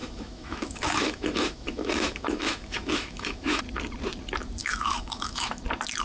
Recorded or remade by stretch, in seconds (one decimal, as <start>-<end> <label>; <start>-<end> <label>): 0.0-3.6 remade; 3.6-4.6 recorded; 4.6-5.6 remade; 5.6-6.0 recorded